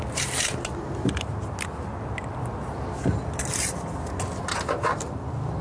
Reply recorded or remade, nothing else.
recorded